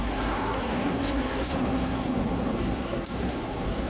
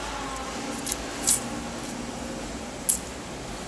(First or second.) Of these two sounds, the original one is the second